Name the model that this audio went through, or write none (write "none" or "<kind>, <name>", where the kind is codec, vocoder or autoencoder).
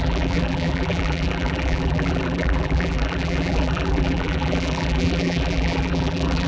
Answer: vocoder, BigVGAN v2